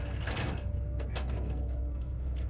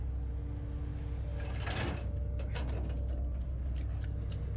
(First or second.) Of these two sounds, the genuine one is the second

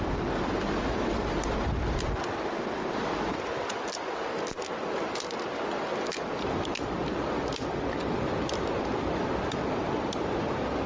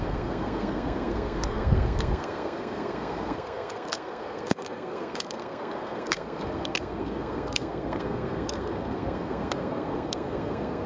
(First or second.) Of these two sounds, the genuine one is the first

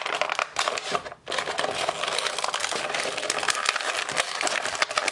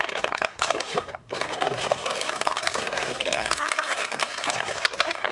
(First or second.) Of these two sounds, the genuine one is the first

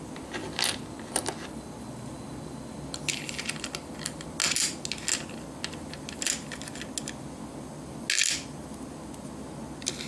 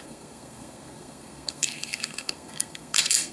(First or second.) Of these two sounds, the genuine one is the first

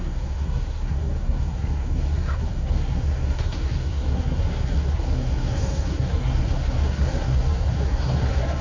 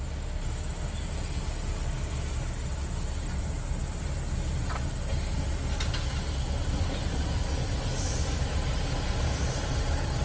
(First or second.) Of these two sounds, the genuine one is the second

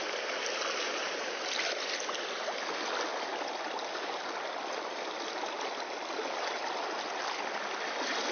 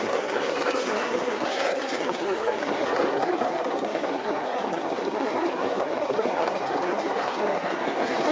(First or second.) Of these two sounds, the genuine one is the first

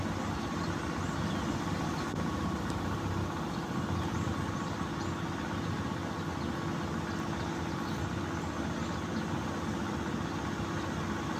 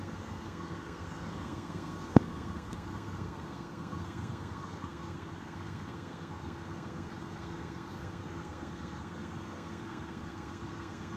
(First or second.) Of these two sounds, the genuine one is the first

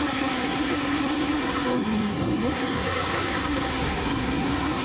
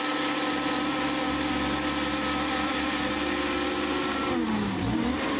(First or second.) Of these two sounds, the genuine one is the second